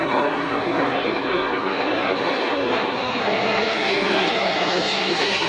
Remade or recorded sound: remade